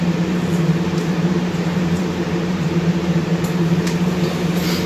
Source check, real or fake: fake